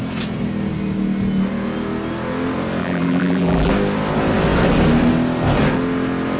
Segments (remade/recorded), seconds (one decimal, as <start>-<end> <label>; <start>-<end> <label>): 0.0-2.8 recorded; 2.8-3.7 remade; 3.7-6.4 recorded